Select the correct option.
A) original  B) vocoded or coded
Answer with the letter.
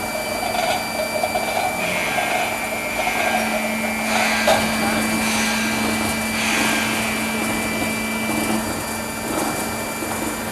A